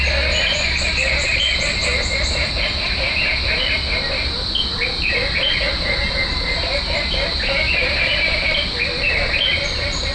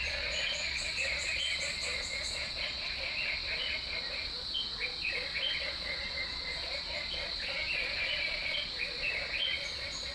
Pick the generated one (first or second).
second